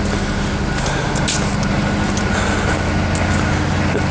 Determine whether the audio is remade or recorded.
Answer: recorded